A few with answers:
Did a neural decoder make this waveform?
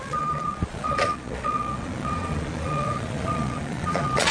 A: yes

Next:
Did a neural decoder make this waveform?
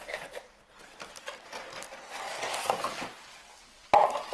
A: no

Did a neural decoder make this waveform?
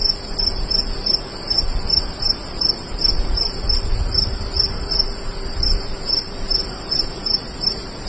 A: no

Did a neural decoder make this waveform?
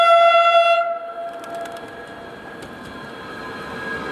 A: no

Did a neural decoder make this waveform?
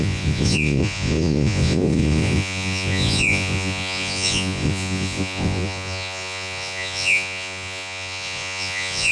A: yes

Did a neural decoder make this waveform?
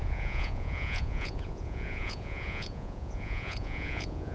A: yes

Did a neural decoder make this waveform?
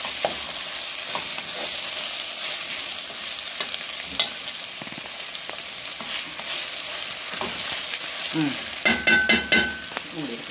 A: no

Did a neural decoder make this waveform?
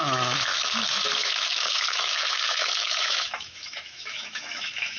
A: yes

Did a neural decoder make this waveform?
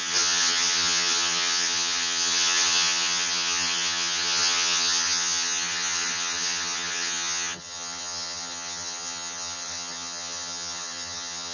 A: yes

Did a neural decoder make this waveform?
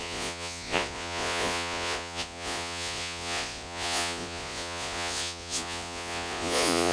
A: yes